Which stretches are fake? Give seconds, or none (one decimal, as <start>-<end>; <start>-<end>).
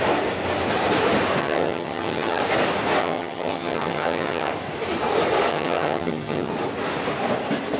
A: 1.4-2.4; 3.0-4.5; 5.5-6.5